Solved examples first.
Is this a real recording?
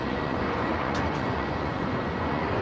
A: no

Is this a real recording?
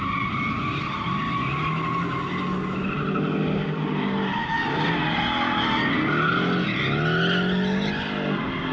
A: yes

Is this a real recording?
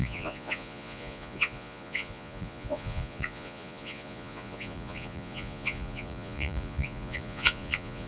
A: no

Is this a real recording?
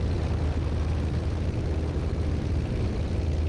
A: yes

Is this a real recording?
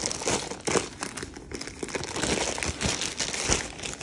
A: yes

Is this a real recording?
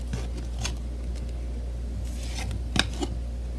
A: yes